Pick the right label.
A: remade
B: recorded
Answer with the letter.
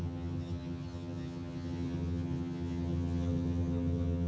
A